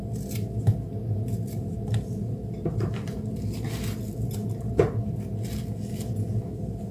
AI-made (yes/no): no